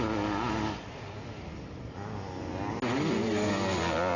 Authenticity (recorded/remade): recorded